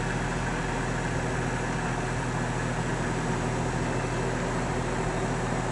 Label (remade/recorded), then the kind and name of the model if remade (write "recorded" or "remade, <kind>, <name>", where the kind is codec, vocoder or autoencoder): recorded